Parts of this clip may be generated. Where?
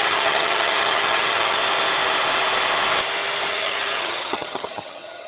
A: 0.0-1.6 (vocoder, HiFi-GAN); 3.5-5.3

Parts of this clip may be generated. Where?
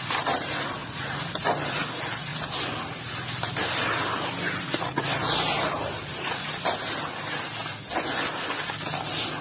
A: 0.8-1.3 (vocoder, Vocos)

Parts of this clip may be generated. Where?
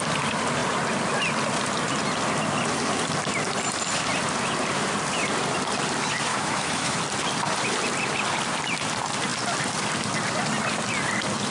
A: 6.3-7.0 (autoencoder, DAC-VAE)